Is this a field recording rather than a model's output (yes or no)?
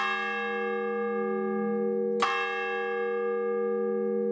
yes